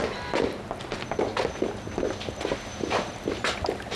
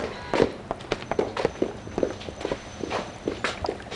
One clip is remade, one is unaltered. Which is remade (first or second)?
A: second